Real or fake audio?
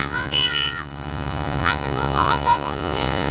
fake